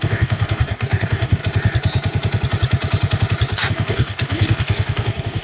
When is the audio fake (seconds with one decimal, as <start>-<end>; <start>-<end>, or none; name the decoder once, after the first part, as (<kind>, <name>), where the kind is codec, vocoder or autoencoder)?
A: 0.0-1.4 (codec, DAC); 3.7-5.4